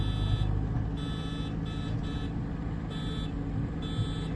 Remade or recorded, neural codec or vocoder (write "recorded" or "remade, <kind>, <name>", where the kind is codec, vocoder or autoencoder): recorded